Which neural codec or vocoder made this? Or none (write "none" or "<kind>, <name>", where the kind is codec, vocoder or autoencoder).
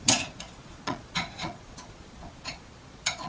vocoder, Vocos